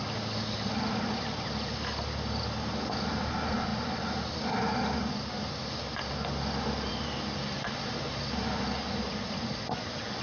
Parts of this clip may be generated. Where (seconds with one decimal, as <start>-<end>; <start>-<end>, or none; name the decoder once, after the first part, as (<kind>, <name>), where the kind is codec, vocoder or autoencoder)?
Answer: none